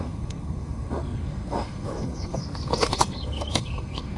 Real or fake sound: fake